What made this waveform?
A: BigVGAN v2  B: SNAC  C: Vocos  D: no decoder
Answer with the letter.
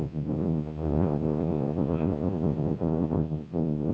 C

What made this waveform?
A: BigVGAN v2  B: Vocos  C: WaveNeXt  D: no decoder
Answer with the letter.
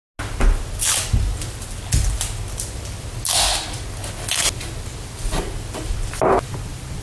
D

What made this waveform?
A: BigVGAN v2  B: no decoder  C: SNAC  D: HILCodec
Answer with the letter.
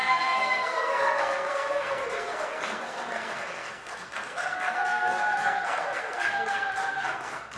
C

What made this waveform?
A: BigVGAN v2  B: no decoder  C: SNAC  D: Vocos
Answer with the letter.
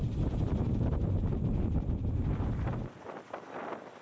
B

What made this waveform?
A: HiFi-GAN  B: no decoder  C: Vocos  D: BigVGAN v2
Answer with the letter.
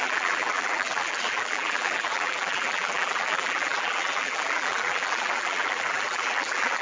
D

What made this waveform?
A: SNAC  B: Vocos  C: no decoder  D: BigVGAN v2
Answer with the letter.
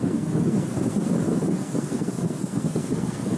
A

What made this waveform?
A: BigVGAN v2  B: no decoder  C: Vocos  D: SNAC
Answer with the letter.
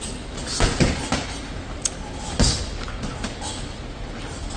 B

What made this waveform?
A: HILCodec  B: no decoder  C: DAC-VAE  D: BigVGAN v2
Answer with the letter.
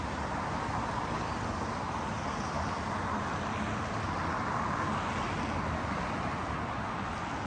B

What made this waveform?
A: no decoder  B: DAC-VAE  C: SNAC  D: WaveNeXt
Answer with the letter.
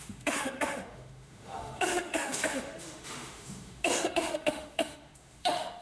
B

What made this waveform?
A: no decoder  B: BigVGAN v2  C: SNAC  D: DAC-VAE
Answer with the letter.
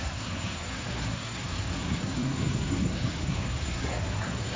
C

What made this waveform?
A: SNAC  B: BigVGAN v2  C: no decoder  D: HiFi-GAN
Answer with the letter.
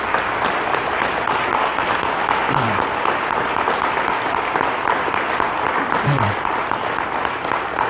C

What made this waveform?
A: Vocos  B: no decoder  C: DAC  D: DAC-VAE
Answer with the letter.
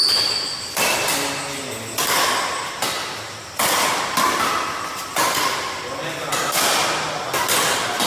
B